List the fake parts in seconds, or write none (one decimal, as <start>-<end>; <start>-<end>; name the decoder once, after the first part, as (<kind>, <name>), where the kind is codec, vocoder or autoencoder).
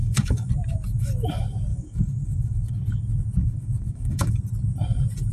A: 0.0-0.5 (codec, DAC); 1.7-2.7; 3.4-4.4